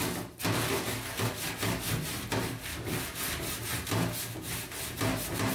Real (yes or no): yes